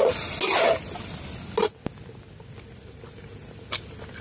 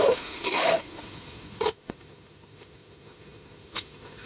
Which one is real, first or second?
first